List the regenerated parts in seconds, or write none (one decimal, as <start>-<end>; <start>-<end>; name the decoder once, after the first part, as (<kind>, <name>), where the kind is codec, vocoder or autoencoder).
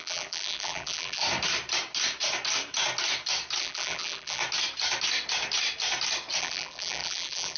0.0-1.2 (vocoder, BigVGAN v2); 3.6-4.4; 6.4-7.6